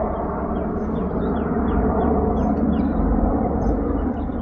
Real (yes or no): yes